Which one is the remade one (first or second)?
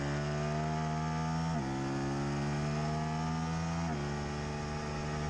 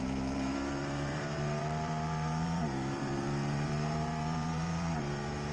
second